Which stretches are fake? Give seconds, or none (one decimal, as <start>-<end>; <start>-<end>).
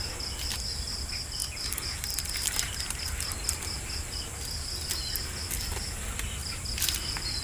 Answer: none